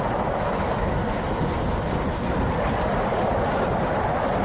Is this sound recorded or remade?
recorded